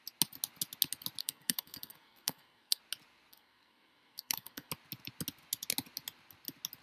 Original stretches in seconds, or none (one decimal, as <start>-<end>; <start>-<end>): 0.0-1.2; 2.8-3.3; 4.7-6.8